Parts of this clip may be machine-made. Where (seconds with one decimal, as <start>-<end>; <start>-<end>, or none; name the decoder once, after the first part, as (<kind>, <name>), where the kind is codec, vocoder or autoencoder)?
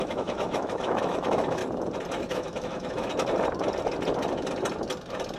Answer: 0.0-1.6 (autoencoder, DAC-VAE); 2.2-3.1